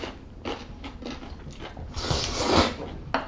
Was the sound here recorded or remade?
recorded